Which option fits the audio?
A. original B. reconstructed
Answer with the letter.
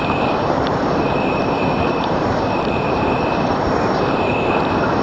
B